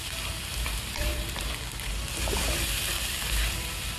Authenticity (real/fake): fake